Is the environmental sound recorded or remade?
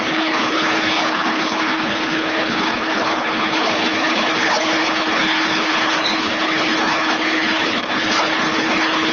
remade